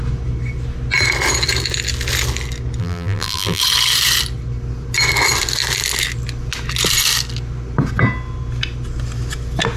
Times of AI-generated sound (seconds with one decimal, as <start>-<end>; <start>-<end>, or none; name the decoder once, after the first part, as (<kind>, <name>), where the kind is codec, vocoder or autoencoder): 2.8-3.6 (vocoder, BigVGAN v2)